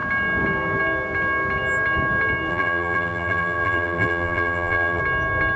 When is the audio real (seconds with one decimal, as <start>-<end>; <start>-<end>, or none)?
0.0-2.5; 5.0-5.6